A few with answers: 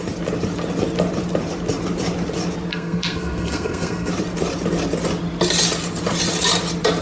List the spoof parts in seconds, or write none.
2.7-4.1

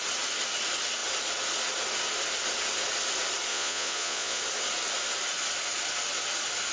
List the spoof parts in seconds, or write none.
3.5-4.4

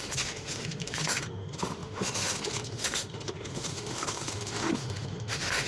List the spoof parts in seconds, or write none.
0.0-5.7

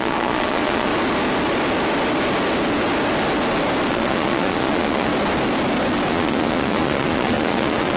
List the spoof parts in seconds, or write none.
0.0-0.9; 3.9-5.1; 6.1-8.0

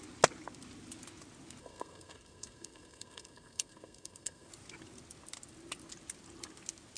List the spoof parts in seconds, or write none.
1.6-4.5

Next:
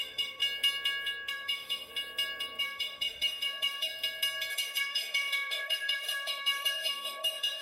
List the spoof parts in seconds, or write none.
0.0-0.4; 1.3-1.9; 2.6-3.9; 4.5-7.6

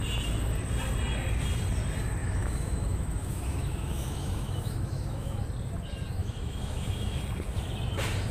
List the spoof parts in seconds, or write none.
2.2-5.4; 6.2-7.2

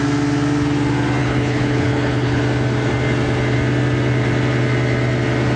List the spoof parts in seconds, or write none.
1.2-2.4